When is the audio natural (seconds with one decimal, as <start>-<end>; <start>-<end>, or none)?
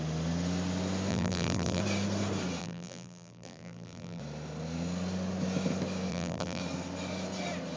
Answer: 0.0-1.1; 1.8-2.6; 4.2-6.1; 6.6-7.8